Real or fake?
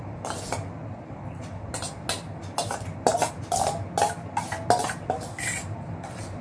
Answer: real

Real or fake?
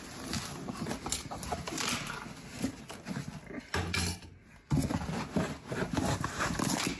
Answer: real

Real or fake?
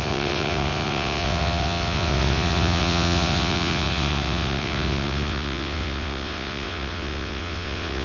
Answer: fake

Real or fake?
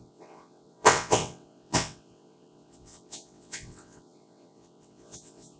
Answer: fake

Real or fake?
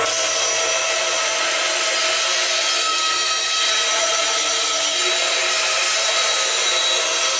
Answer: real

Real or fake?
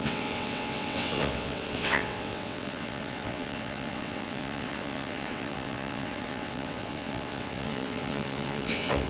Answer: fake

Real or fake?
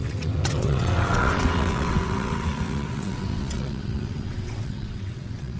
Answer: fake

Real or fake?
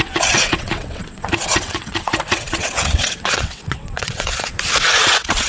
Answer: fake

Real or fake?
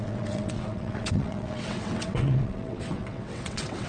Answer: fake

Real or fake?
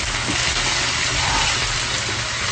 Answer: real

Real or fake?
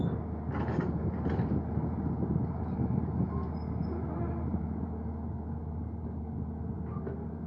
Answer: real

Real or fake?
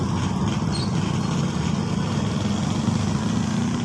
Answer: real